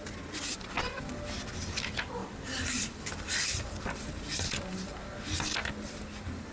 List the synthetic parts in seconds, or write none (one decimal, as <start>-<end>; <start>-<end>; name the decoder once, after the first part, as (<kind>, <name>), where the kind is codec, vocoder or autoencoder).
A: 2.2-3.0 (vocoder, BigVGAN v2)